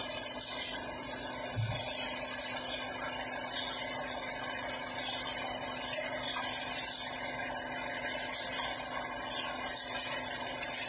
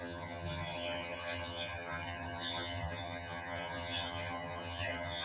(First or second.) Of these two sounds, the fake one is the second